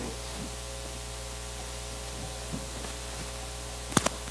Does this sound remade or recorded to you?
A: recorded